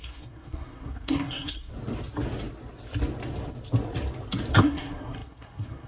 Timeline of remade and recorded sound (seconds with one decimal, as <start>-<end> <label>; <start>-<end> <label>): 0.0-1.7 remade; 1.7-4.6 recorded; 4.6-5.9 remade